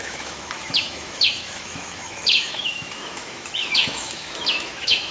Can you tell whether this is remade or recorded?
remade